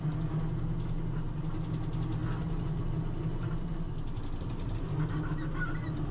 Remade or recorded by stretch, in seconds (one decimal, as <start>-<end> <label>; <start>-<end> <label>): 0.0-6.1 recorded